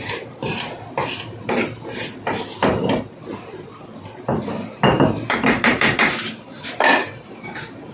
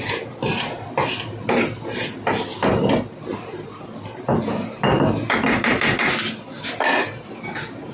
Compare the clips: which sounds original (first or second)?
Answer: second